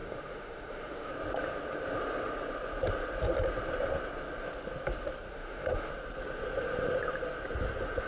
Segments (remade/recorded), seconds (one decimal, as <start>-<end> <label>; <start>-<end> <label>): 0.0-1.1 remade; 1.1-5.3 recorded; 5.3-5.9 remade; 5.9-8.1 recorded